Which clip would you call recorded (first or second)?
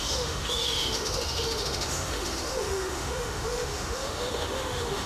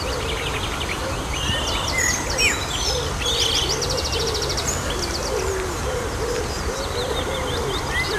second